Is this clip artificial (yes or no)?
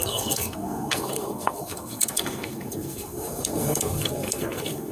yes